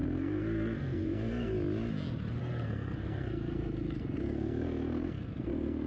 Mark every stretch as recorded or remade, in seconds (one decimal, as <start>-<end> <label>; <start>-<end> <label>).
0.0-1.5 remade; 1.5-2.4 recorded; 2.4-5.9 remade